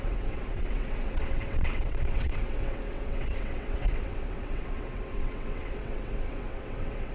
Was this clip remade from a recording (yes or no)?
yes